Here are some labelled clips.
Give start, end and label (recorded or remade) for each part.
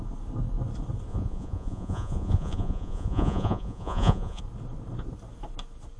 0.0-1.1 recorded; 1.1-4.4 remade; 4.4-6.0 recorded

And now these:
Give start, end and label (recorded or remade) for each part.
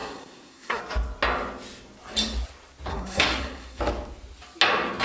0.0-0.8 remade; 0.8-2.9 recorded; 2.9-3.8 remade; 3.8-5.0 recorded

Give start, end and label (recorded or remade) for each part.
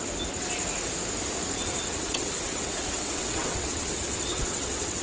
0.0-1.8 recorded; 1.8-5.0 remade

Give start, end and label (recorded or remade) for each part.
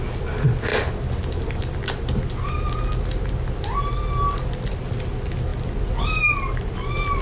0.0-7.2 recorded